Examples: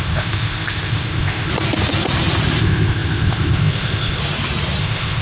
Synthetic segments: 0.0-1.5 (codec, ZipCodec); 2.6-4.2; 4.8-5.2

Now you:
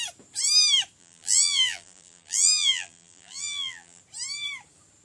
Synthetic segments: 1.0-4.0 (vocoder, BigVGAN v2)

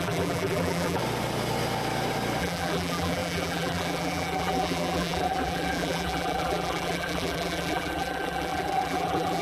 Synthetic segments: 0.0-1.0 (vocoder, BigVGAN v2); 2.4-9.4

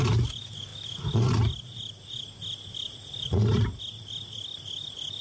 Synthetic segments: none

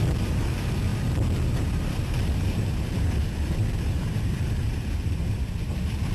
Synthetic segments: 0.0-6.1 (vocoder, BigVGAN v2)